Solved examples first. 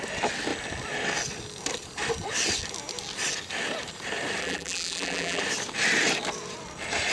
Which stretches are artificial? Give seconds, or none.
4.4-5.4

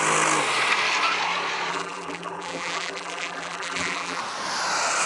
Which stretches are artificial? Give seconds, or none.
1.7-4.2

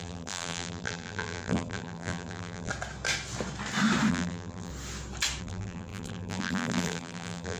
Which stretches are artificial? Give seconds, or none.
0.0-2.7; 4.1-4.7; 5.4-7.6

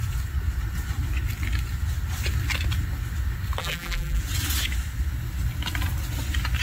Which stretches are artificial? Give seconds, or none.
3.6-4.2

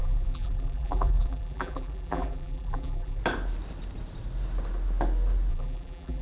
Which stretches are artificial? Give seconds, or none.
0.0-3.2; 5.5-6.2

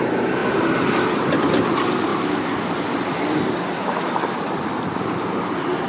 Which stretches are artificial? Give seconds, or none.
0.4-1.3; 2.1-5.9

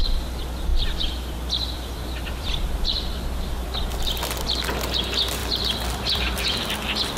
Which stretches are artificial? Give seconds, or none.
0.7-3.8; 5.4-6.7